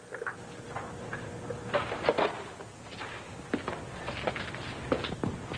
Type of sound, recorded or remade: recorded